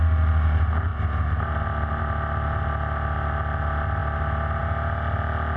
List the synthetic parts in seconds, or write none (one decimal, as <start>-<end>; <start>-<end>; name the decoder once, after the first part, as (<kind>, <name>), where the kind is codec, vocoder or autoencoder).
none